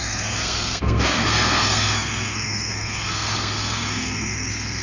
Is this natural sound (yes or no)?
no